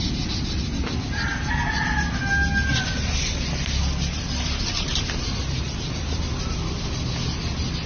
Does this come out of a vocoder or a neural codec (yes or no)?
no